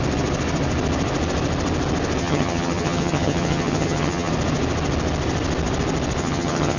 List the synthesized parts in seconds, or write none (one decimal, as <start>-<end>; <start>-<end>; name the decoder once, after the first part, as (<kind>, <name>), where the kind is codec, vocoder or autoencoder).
2.2-4.3 (vocoder, HiFi-GAN); 6.2-6.8

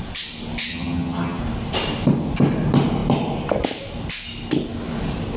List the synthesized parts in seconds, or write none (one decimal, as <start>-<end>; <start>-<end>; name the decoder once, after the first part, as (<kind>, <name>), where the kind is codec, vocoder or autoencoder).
0.7-1.4 (vocoder, HiFi-GAN)

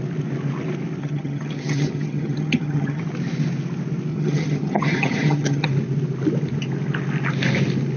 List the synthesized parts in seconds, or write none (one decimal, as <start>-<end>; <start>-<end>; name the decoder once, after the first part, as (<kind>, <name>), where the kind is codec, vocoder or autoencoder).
1.0-3.0 (vocoder, HiFi-GAN); 4.1-5.7